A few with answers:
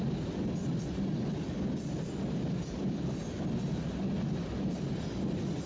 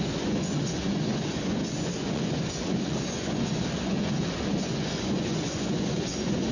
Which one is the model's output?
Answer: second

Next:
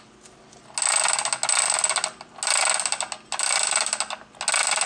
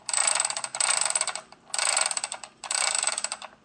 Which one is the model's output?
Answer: second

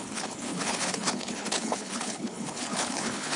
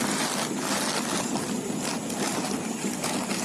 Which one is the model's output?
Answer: first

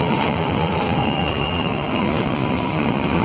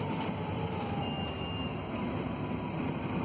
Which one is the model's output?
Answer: first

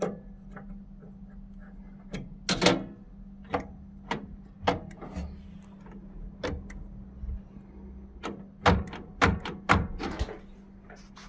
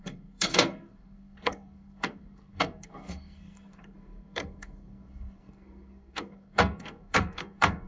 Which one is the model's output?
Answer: second